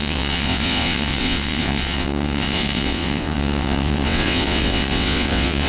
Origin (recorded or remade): remade